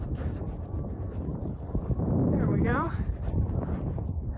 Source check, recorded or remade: remade